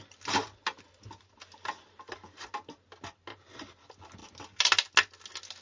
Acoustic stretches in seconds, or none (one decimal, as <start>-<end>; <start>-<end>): 0.0-5.6